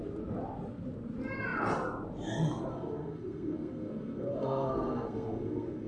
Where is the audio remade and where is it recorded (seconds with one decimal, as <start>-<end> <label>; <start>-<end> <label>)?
0.0-2.7 recorded; 2.7-5.9 remade